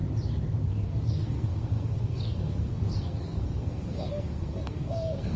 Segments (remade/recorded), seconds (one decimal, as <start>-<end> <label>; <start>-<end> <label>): 0.0-0.7 recorded; 0.7-5.4 remade